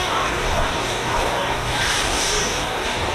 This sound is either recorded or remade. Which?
remade